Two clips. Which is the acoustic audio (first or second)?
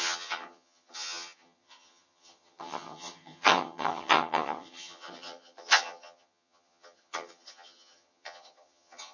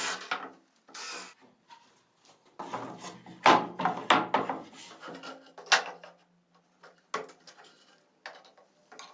second